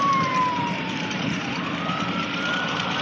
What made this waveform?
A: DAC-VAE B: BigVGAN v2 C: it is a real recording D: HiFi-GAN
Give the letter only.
B